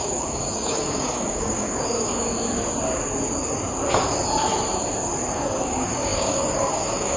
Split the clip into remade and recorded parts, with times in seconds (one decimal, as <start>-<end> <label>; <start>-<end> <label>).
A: 0.0-2.3 remade; 2.3-5.3 recorded; 5.3-7.2 remade